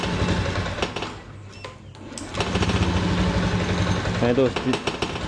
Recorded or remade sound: recorded